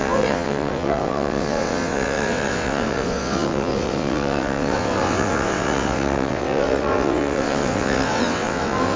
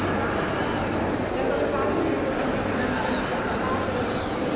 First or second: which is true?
second